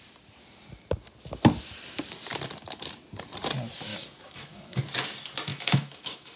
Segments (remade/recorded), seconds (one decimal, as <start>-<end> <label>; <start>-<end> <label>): 0.0-3.9 recorded; 3.9-4.8 remade; 4.8-5.5 recorded; 5.5-6.4 remade